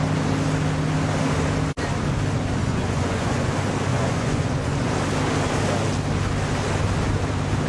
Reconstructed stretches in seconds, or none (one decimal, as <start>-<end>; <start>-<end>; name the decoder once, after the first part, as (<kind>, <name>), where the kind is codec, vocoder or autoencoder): 2.6-3.5 (vocoder, Vocos); 3.9-4.9